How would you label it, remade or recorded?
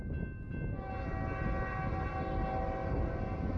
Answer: recorded